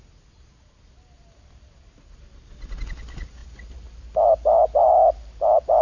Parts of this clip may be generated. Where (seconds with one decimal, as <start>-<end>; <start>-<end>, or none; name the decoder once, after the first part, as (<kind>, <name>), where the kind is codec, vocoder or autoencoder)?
3.4-4.9 (vocoder, BigVGAN v2)